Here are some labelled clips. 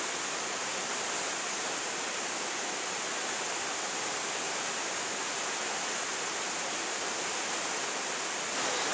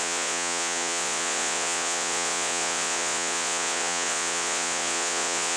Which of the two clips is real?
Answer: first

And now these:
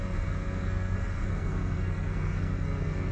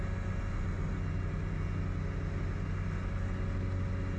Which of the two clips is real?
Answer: second